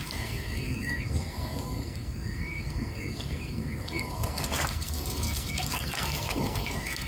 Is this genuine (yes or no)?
no